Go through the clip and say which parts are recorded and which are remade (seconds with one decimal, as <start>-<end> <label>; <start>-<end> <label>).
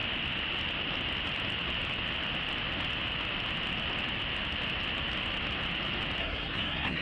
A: 0.0-6.2 recorded; 6.2-7.0 remade